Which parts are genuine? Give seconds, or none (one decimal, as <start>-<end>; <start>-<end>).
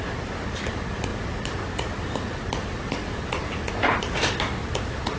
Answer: 0.0-5.2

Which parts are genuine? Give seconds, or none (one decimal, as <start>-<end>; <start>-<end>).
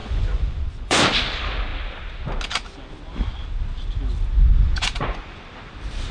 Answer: 1.0-4.7; 5.5-6.1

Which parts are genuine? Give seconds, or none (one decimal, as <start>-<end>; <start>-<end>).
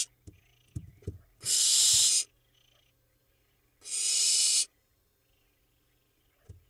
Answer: 0.0-6.7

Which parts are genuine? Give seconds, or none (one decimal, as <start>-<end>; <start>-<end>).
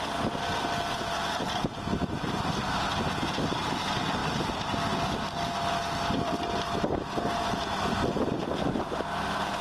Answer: 0.0-9.6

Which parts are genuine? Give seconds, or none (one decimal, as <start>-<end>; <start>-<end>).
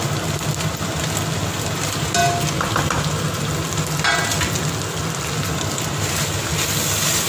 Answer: 0.0-7.3